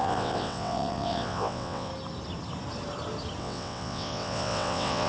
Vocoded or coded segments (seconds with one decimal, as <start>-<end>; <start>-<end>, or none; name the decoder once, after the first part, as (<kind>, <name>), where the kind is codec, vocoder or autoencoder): 0.0-1.9 (vocoder, WaveNeXt); 3.4-5.1